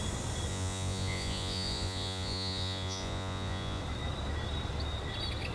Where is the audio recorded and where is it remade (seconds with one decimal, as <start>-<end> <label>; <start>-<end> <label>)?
0.0-0.5 recorded; 0.5-3.8 remade; 3.8-5.5 recorded